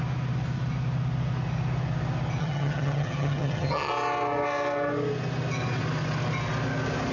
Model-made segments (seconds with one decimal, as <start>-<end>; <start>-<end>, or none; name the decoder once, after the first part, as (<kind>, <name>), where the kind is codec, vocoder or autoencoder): 2.4-3.9 (vocoder, HiFi-GAN)